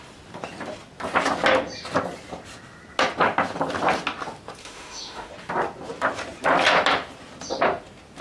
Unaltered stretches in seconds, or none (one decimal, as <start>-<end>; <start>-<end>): 0.0-4.6; 5.3-8.2